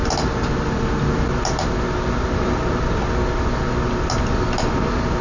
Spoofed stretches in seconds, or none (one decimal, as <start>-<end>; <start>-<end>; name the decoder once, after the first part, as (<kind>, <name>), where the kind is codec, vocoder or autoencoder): none